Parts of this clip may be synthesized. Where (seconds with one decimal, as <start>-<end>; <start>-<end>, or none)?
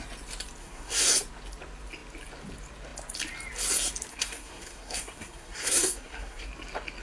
0.6-1.1; 4.1-6.5